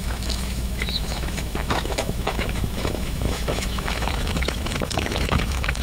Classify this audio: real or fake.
fake